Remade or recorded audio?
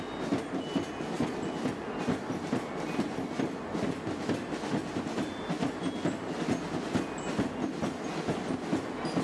recorded